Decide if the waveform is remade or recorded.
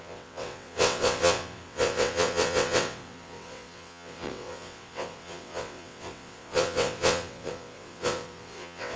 remade